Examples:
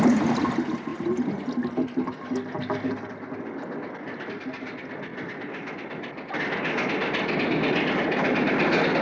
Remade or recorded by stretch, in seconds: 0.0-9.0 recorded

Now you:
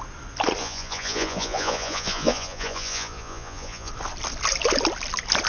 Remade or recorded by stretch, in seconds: 0.0-0.6 recorded; 0.6-3.9 remade; 3.9-5.5 recorded

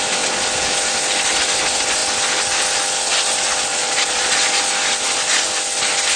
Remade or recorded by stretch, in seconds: 0.0-3.7 recorded; 3.7-4.6 remade; 4.6-6.2 recorded

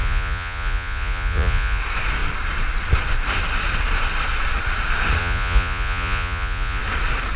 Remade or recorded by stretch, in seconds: 0.0-1.8 remade; 1.8-5.2 recorded; 5.2-6.8 remade; 6.8-7.4 recorded

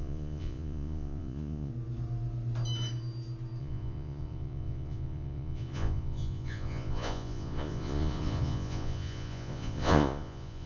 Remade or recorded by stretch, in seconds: 0.0-1.7 remade; 1.7-3.6 recorded; 3.6-10.7 remade